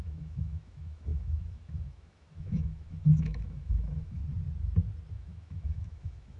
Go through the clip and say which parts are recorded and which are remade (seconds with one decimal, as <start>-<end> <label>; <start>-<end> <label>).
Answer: 0.0-4.2 remade; 4.2-5.1 recorded; 5.1-6.4 remade